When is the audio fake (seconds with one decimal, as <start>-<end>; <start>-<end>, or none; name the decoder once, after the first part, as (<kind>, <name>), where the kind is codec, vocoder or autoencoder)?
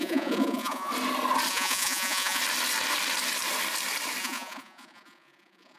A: 0.0-0.9 (vocoder, Vocos); 1.5-2.4; 4.2-5.8